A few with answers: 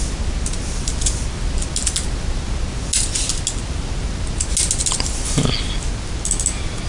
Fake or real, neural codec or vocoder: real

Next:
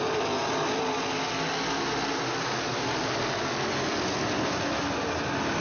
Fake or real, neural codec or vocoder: real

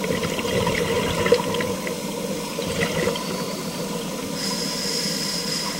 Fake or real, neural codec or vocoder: real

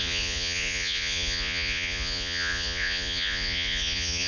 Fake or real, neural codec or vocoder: fake, vocoder, Vocos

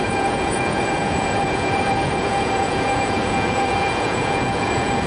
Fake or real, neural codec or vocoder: fake, vocoder, Vocos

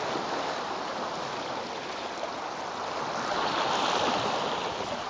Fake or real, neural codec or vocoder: real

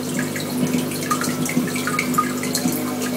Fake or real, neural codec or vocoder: real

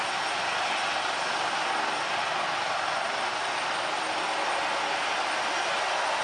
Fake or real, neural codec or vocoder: real